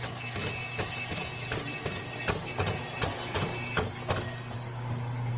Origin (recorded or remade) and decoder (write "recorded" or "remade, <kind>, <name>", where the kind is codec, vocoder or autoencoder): recorded